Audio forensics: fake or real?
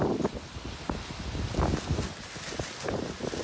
real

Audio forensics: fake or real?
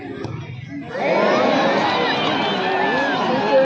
real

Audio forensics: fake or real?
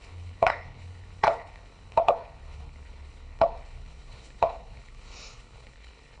fake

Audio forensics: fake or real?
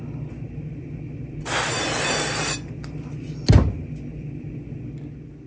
real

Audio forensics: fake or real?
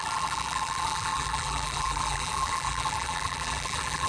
fake